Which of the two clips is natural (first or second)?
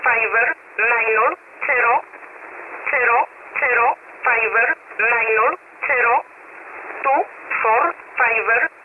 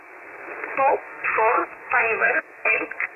first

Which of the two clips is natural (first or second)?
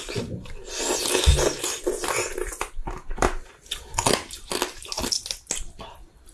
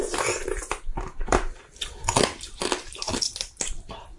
first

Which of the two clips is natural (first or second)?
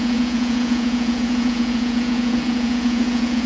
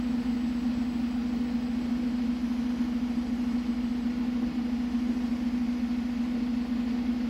second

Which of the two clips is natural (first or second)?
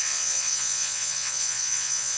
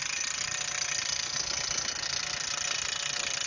second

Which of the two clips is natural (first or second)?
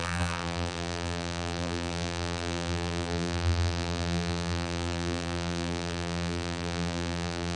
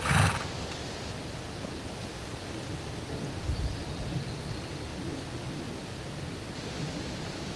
second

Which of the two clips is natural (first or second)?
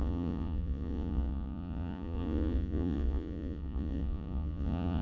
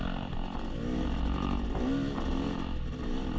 second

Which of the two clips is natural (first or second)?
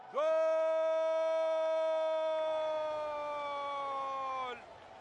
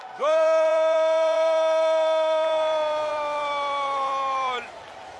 first